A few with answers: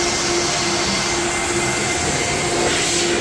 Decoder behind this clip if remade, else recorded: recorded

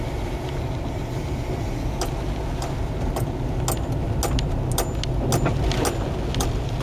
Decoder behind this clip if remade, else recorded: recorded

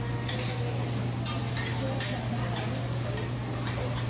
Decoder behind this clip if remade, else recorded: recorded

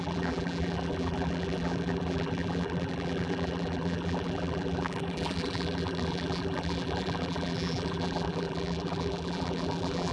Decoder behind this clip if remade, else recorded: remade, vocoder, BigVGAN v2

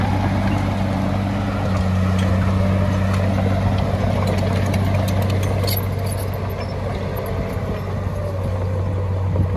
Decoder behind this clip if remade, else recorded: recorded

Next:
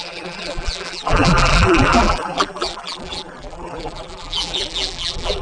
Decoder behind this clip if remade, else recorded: remade, vocoder, BigVGAN v2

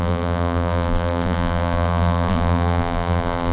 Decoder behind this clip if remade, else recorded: remade, vocoder, BigVGAN v2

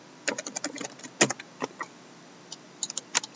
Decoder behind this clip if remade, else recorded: recorded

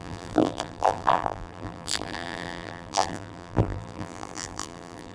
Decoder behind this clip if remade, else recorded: remade, vocoder, BigVGAN v2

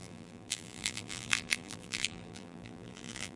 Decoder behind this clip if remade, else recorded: remade, vocoder, BigVGAN v2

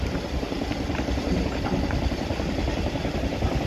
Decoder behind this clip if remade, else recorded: remade, vocoder, BigVGAN v2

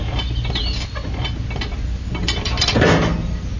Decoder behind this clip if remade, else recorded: recorded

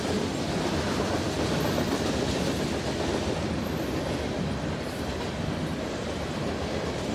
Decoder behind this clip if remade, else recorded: recorded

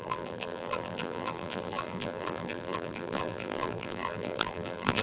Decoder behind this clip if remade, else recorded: remade, vocoder, BigVGAN v2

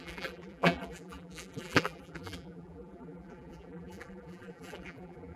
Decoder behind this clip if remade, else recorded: remade, vocoder, BigVGAN v2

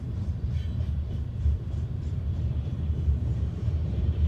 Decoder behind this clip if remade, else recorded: remade, vocoder, BigVGAN v2